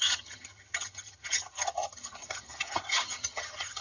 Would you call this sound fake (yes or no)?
yes